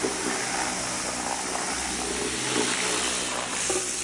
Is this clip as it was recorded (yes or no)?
yes